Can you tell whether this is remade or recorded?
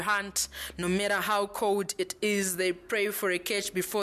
recorded